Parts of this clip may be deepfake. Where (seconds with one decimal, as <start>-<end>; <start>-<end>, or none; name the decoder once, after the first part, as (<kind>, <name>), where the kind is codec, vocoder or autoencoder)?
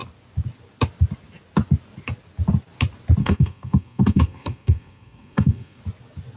3.2-5.8 (codec, SNAC)